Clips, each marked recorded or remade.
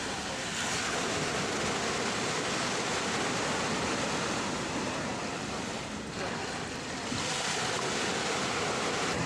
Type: recorded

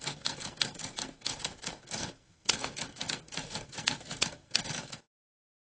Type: remade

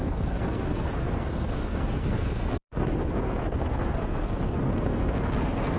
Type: remade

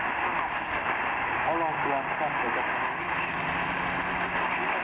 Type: recorded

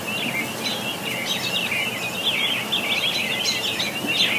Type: recorded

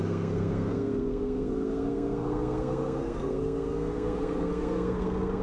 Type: remade